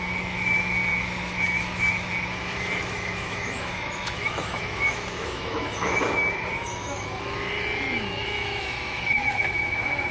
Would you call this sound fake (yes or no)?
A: yes